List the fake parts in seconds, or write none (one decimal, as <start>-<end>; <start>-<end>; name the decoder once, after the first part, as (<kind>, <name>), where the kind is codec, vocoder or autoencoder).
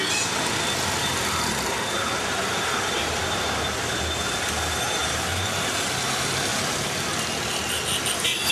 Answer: 1.0-3.4 (vocoder, BigVGAN v2); 5.0-5.9